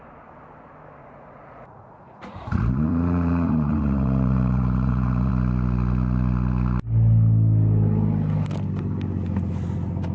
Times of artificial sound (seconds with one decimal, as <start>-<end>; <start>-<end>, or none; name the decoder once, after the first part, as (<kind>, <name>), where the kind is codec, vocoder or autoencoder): 1.0-5.3 (vocoder, Vocos)